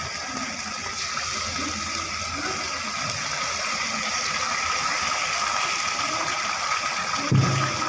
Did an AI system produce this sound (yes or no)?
no